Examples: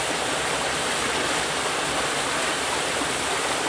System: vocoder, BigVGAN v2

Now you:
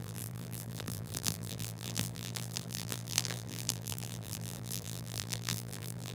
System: vocoder, BigVGAN v2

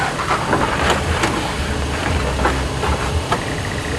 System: none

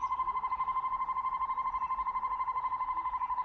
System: none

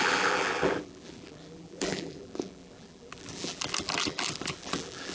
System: vocoder, BigVGAN v2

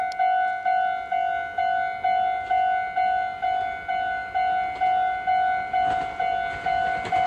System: none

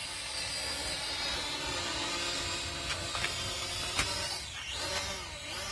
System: none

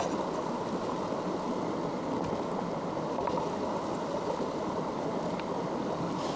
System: none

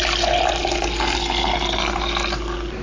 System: none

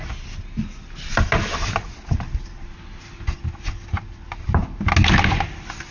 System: none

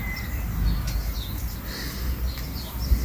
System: none